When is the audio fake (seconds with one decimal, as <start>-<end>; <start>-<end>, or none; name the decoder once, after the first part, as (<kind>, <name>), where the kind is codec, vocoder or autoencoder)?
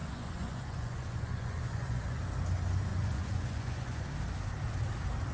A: 0.0-2.2 (vocoder, Vocos); 2.9-4.0